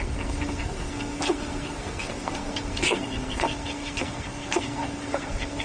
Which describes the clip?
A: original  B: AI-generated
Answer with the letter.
B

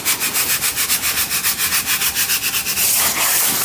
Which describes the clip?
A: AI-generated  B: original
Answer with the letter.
B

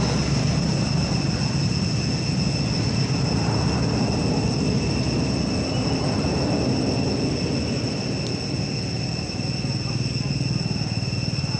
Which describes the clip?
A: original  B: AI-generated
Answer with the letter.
A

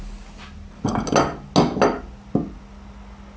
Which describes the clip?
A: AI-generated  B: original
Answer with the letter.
B